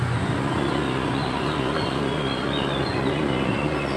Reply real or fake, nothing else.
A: fake